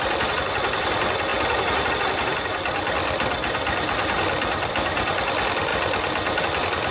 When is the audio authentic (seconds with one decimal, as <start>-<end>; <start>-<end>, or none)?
0.0-6.9